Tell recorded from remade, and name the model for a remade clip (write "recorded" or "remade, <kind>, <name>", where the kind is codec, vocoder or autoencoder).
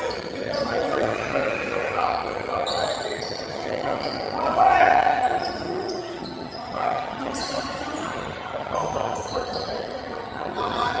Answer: remade, vocoder, HiFi-GAN